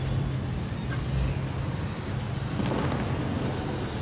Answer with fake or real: real